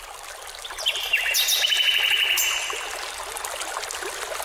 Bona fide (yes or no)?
yes